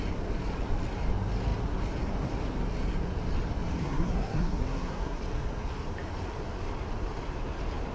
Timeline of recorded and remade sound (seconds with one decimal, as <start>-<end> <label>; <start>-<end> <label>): 0.0-3.8 recorded; 3.8-5.2 remade; 5.2-7.9 recorded